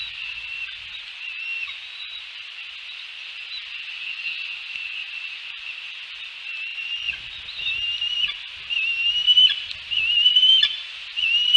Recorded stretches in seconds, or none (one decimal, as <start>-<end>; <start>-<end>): 0.0-6.7; 7.4-11.6